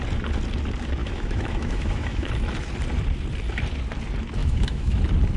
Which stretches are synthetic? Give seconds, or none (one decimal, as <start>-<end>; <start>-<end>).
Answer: 1.0-2.3; 4.4-5.0